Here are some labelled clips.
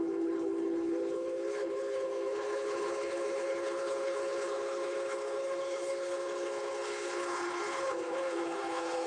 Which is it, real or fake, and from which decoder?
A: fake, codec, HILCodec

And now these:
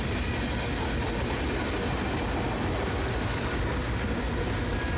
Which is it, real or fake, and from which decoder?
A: real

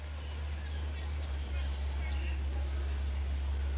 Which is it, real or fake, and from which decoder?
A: real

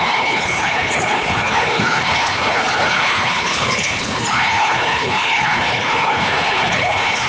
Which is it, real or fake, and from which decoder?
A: fake, codec, HILCodec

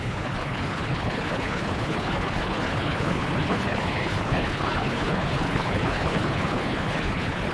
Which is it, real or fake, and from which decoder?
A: fake, codec, HILCodec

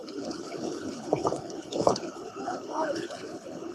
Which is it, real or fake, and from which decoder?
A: fake, codec, HILCodec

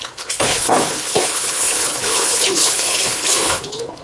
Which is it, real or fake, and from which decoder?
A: fake, codec, HILCodec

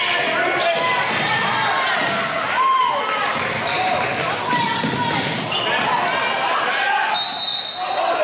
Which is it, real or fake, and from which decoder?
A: real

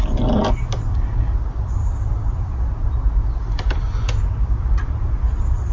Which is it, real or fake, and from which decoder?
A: real